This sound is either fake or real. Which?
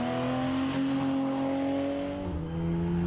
real